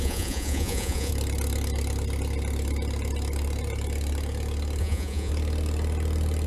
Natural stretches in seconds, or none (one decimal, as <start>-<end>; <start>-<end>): 1.1-4.8; 5.3-6.5